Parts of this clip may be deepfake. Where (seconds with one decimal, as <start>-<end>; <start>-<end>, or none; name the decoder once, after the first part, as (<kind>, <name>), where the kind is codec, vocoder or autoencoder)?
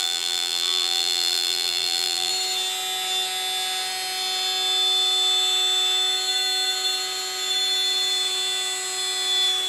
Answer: 0.0-2.3 (vocoder, BigVGAN v2)